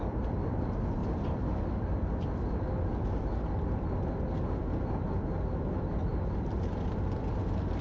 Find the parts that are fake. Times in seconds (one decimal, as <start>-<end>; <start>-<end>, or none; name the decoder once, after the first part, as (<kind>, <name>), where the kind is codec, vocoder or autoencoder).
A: none